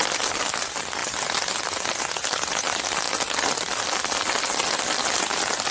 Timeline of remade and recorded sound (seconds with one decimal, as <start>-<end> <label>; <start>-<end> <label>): 0.0-5.7 recorded